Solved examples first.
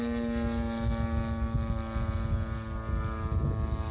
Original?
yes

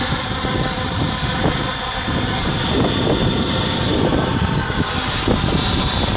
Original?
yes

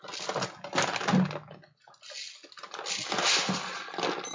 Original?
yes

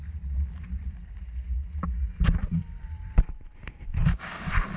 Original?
yes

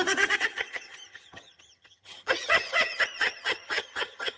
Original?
no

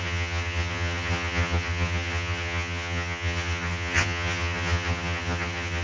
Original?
no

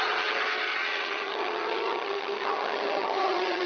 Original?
no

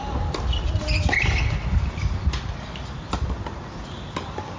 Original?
yes